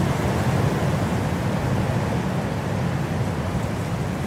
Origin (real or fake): fake